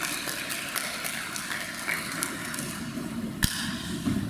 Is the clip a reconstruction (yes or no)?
no